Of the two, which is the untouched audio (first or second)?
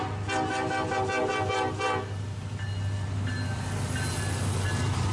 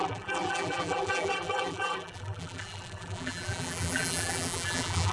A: first